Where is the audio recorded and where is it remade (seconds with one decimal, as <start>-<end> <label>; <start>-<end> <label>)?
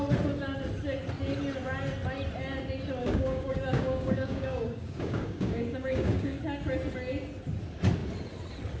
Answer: 0.0-3.0 recorded; 3.0-6.4 remade; 6.4-8.8 recorded